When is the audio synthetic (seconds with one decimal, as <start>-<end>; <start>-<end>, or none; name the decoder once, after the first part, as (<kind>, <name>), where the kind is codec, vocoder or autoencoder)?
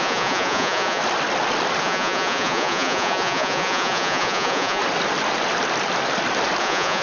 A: 0.0-1.0 (vocoder, Vocos); 1.8-4.8; 6.6-7.0